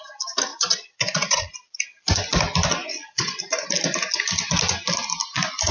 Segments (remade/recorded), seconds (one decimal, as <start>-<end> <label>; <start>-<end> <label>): 0.0-0.5 recorded; 0.5-1.5 remade; 1.5-2.9 recorded; 2.9-3.7 remade; 3.7-5.7 recorded